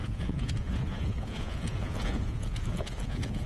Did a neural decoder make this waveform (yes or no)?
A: yes